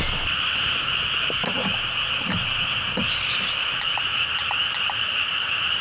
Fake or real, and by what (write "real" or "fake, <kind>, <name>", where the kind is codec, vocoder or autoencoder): real